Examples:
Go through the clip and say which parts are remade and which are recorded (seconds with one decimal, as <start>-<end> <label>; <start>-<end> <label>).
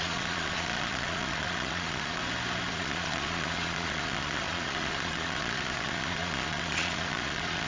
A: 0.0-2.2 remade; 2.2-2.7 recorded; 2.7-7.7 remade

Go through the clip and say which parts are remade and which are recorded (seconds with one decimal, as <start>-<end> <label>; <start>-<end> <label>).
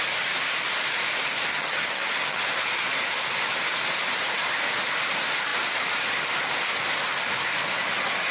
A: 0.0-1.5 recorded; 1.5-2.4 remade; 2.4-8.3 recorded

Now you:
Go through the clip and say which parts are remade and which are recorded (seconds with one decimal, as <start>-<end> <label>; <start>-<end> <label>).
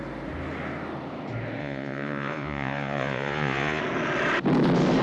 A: 0.0-1.6 recorded; 1.6-3.8 remade; 3.8-5.0 recorded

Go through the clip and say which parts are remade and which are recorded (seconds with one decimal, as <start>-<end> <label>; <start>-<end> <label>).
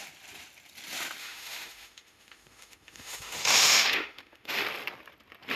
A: 0.0-1.2 recorded; 1.2-4.6 remade; 4.6-5.6 recorded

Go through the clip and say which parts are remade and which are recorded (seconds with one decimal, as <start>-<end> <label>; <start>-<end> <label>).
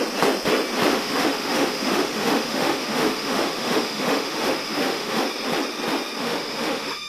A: 0.0-0.9 recorded; 0.9-5.2 remade; 5.2-6.2 recorded; 6.2-7.1 remade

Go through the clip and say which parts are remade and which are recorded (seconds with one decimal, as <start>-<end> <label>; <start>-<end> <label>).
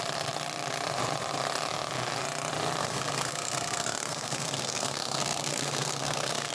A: 0.0-2.8 recorded; 2.8-6.5 remade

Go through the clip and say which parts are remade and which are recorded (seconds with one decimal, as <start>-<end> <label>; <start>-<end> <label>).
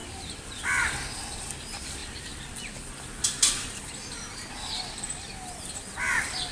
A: 0.0-6.5 recorded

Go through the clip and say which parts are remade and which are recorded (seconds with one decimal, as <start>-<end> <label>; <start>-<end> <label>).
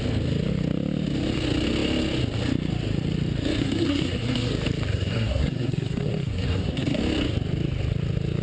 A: 0.0-3.6 recorded; 3.6-4.5 remade; 4.5-4.9 recorded; 4.9-7.0 remade; 7.0-8.4 recorded